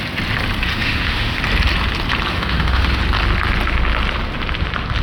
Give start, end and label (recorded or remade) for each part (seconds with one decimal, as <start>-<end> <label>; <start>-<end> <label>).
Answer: 0.0-0.7 recorded; 0.7-1.4 remade; 1.4-2.3 recorded; 2.3-3.0 remade; 3.0-5.0 recorded